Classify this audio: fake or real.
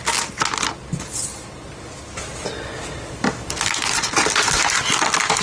real